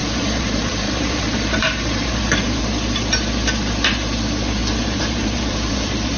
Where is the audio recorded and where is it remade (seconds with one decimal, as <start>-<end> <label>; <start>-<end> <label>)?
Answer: 0.0-2.6 remade; 2.6-4.6 recorded; 4.6-6.2 remade